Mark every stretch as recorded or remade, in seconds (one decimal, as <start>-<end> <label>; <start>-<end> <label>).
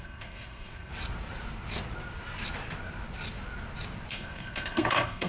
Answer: 0.0-0.9 remade; 0.9-4.1 recorded; 4.1-5.3 remade